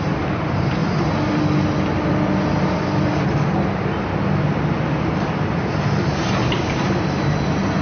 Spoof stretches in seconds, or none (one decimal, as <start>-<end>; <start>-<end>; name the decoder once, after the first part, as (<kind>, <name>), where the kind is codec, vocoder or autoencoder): 0.0-0.8 (vocoder, BigVGAN v2); 5.5-7.8